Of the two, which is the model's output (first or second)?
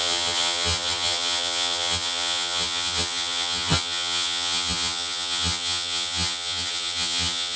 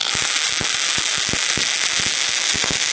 first